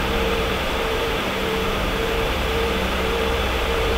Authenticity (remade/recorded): remade